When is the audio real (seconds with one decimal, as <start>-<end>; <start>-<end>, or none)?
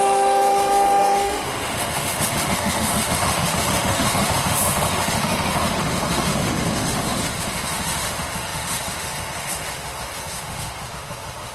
none